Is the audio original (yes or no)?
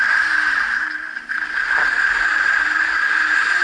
no